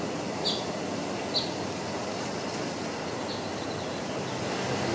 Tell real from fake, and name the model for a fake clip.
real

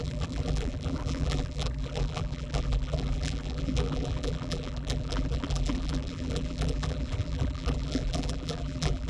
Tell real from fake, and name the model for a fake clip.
fake, vocoder, BigVGAN v2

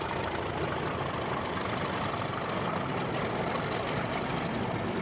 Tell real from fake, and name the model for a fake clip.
real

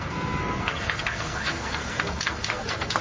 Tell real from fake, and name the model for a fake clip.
fake, codec, SNAC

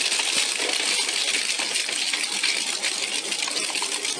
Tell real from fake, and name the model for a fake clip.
real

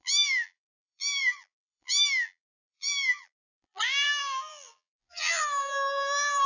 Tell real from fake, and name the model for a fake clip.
fake, vocoder, BigVGAN v2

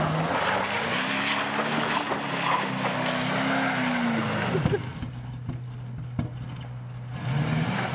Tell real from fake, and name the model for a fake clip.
real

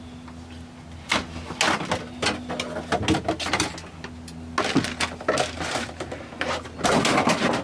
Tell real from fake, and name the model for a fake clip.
real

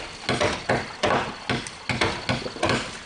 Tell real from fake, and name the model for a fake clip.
real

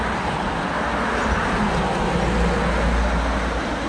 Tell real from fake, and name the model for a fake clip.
real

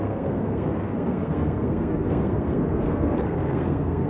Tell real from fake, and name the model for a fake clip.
fake, codec, SNAC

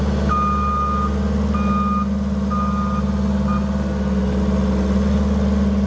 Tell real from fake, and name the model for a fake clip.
real